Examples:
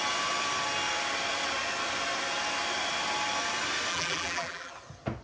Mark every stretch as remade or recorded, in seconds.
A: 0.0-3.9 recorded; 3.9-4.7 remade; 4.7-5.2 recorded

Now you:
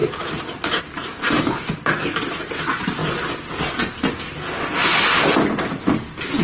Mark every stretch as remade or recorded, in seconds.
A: 0.0-6.4 recorded